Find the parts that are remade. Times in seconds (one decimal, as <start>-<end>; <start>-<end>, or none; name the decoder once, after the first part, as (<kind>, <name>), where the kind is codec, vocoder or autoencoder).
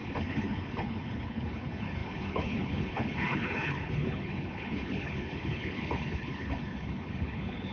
0.0-7.7 (codec, HILCodec)